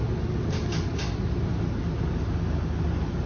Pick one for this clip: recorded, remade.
recorded